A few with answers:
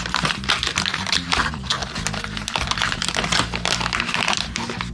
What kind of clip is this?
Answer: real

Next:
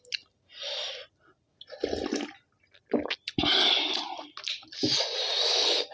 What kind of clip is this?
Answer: real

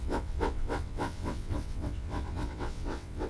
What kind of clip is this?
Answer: fake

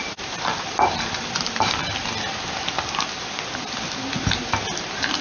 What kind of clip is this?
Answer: real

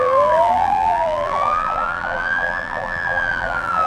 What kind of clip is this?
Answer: fake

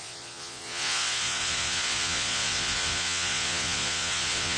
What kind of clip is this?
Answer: fake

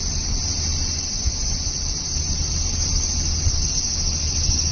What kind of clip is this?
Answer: real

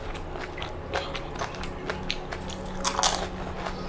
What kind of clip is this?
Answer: real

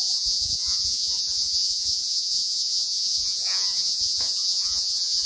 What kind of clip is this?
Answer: fake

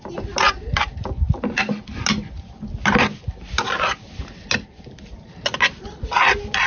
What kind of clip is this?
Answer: real